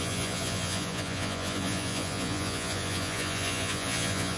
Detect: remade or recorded remade